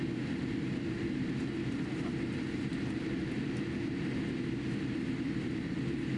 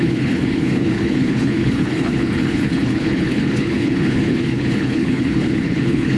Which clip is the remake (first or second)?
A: second